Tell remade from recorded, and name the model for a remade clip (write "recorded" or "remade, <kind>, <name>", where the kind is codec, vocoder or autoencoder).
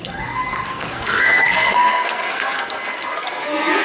remade, codec, SNAC